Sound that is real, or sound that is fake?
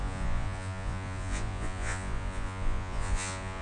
fake